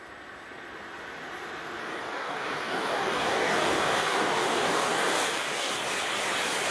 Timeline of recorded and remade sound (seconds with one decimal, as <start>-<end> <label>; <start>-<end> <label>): 0.0-1.8 recorded; 1.8-5.7 remade; 5.7-6.7 recorded